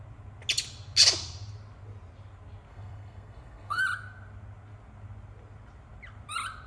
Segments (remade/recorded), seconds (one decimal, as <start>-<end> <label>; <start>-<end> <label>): 0.0-2.7 recorded; 2.7-3.8 remade; 3.8-6.7 recorded